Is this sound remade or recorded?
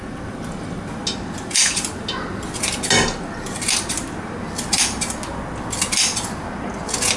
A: recorded